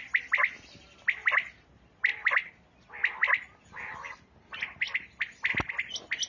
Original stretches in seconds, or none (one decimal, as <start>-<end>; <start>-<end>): 0.0-6.3